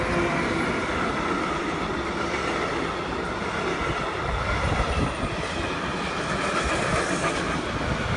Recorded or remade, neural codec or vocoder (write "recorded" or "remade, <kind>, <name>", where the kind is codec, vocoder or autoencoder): recorded